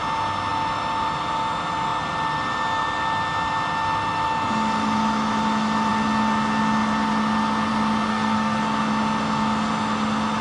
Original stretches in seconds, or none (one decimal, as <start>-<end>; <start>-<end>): 0.0-8.1; 8.6-10.4